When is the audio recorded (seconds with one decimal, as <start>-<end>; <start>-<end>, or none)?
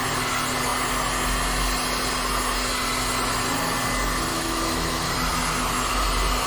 0.0-4.3; 5.1-6.5